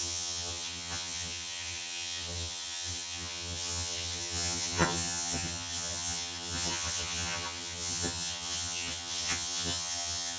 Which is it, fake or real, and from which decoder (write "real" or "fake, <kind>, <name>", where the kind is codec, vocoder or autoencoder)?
fake, vocoder, HiFi-GAN